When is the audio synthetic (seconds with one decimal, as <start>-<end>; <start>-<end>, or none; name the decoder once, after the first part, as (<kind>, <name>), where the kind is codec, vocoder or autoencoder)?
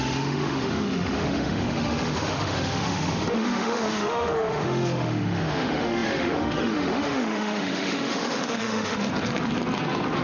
0.0-9.1 (autoencoder, DAC-VAE)